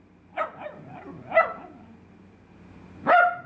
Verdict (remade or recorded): recorded